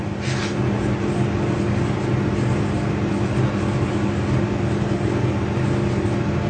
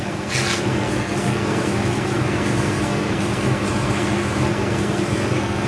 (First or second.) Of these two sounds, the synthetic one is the second